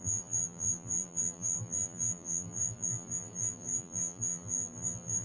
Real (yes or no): no